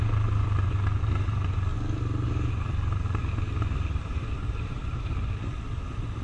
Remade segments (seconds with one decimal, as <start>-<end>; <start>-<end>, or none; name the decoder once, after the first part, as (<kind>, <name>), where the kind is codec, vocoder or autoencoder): 0.0-1.7 (vocoder, BigVGAN v2); 2.6-3.2; 3.8-6.2